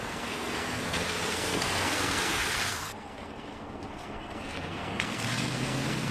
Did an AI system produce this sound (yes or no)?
yes